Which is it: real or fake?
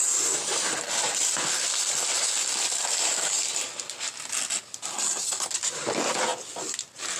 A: real